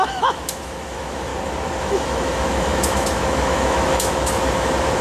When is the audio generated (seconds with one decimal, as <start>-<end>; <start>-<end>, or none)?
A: 0.0-1.3; 1.8-5.0